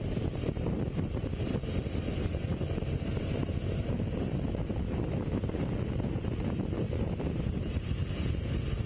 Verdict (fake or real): fake